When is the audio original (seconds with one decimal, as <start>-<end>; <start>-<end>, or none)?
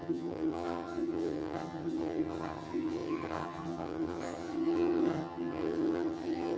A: none